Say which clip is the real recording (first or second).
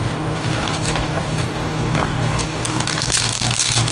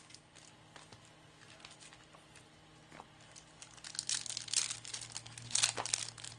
second